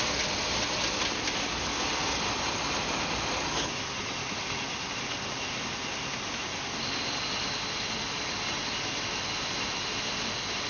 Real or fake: real